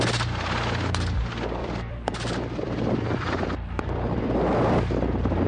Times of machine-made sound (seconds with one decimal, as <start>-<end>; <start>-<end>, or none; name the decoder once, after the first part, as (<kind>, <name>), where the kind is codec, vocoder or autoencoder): 1.6-4.9 (vocoder, BigVGAN v2)